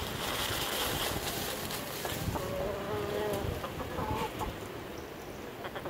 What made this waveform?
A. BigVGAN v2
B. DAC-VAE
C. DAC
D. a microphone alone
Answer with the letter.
D